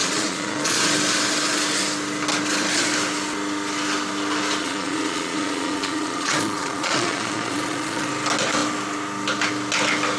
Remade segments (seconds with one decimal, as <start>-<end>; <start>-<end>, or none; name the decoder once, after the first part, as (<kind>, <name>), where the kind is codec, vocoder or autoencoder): 0.0-0.8 (vocoder, Vocos); 4.6-8.1